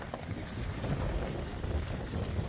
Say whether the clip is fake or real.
real